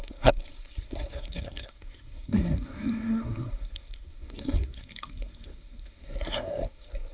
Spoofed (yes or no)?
yes